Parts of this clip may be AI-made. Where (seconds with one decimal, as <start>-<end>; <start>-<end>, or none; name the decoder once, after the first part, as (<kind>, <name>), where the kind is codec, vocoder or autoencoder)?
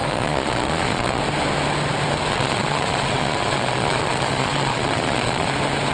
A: 0.0-1.2 (vocoder, Vocos); 2.3-5.5